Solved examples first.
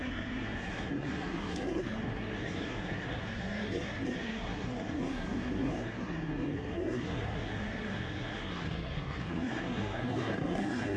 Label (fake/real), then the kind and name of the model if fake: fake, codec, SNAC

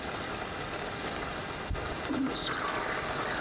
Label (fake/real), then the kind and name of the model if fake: real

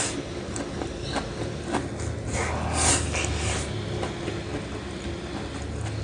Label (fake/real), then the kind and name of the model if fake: real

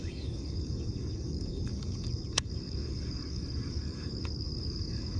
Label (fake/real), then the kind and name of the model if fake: fake, codec, DAC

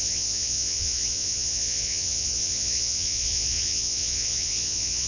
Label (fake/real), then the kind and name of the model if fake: fake, vocoder, Vocos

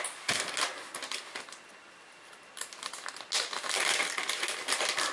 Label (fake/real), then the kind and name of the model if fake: real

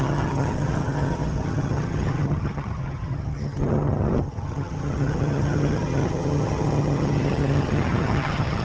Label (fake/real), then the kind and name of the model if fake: fake, vocoder, HiFi-GAN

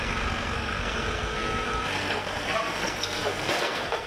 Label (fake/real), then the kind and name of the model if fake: fake, codec, SNAC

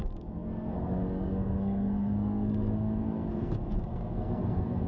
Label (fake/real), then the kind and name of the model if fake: fake, codec, SNAC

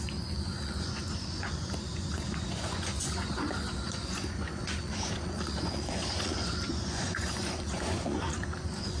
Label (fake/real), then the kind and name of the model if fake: fake, vocoder, Vocos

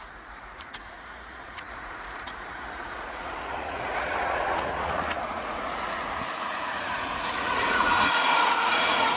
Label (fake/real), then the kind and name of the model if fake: fake, vocoder, Vocos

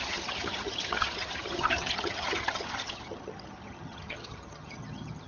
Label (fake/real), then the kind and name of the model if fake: fake, vocoder, HiFi-GAN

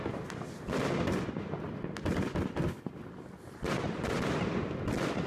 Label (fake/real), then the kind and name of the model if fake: real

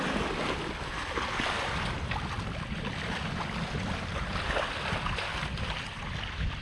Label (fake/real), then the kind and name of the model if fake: real